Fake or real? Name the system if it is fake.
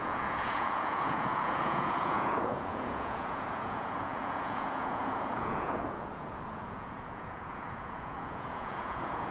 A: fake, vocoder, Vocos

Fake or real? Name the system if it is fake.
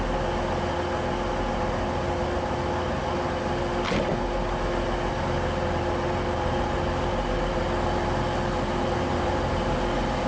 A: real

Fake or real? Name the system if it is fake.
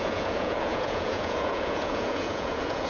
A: fake, vocoder, Vocos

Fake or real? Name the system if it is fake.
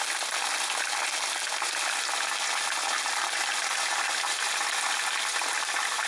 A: real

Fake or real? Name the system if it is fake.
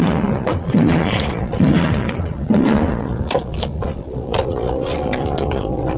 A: fake, vocoder, Vocos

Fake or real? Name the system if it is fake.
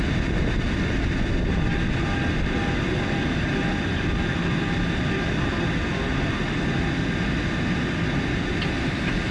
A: real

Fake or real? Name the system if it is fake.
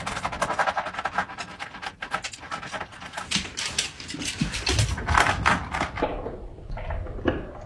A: real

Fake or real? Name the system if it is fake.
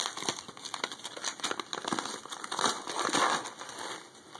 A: real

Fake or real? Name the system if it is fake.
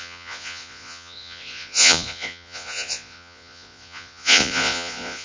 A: fake, vocoder, Vocos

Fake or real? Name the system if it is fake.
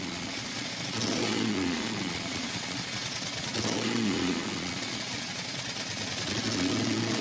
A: fake, vocoder, Vocos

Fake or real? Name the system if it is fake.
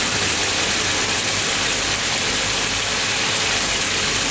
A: real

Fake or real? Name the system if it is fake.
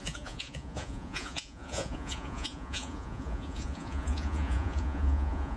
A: fake, vocoder, Vocos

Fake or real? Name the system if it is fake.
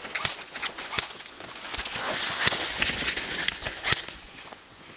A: fake, vocoder, Vocos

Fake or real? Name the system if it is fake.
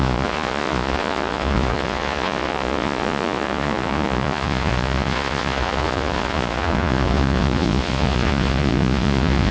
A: fake, vocoder, Vocos